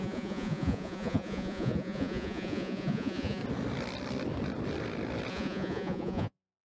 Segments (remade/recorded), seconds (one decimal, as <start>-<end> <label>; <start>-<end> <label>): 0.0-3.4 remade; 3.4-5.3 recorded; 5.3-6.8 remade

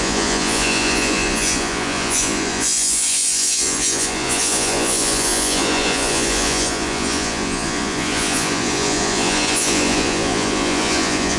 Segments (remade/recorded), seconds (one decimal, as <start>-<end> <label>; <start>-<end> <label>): 0.0-11.4 remade

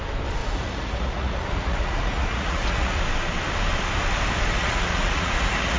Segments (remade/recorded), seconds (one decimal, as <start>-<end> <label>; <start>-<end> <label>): 0.0-0.4 recorded; 0.4-3.0 remade; 3.0-4.6 recorded; 4.6-5.8 remade

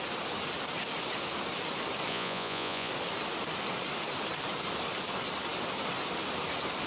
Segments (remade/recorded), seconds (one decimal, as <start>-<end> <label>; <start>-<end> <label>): 0.0-2.1 recorded; 2.1-2.9 remade; 2.9-6.9 recorded